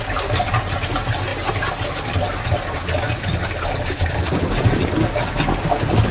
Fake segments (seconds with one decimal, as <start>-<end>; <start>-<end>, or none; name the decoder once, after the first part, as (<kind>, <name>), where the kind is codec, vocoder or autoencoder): none